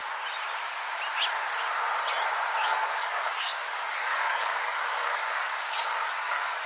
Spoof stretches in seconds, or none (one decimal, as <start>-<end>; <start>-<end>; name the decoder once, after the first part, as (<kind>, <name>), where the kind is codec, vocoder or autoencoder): 2.6-6.7 (codec, DAC)